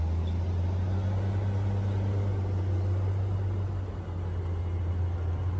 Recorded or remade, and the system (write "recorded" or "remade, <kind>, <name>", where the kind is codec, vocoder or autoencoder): recorded